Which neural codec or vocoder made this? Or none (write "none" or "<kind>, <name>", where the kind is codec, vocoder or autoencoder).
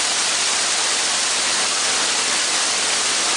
none